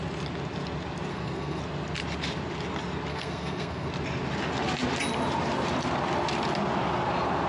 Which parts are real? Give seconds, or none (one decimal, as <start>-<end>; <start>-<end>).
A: 0.0-1.1; 1.6-3.1; 3.9-7.5